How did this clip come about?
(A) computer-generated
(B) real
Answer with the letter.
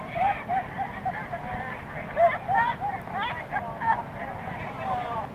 B